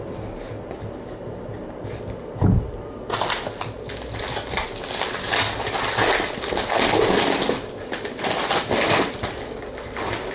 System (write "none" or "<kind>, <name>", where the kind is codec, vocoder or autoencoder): none